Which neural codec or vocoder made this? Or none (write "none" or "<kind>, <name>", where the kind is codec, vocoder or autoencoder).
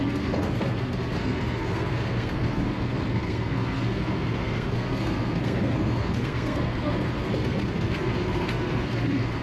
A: codec, SNAC